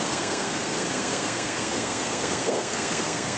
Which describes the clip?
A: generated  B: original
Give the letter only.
A